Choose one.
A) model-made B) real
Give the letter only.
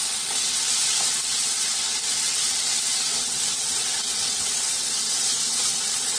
A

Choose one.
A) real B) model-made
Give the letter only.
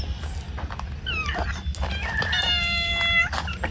A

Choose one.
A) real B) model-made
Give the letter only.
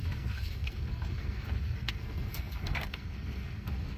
B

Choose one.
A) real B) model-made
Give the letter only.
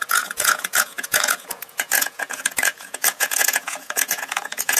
B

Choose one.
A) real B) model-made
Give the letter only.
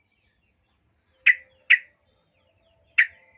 A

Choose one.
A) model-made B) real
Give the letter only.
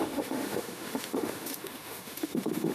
A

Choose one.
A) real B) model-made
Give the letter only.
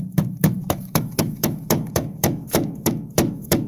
B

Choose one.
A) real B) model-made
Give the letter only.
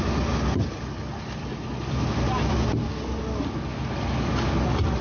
A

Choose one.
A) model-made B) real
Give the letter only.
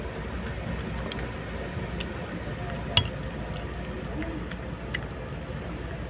B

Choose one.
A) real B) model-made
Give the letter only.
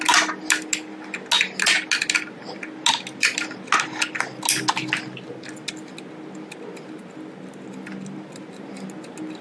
A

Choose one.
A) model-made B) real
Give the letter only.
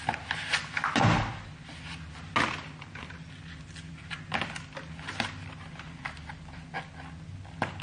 B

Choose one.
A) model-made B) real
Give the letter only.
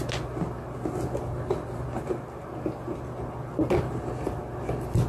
B